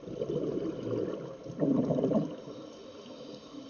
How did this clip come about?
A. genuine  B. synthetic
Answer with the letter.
A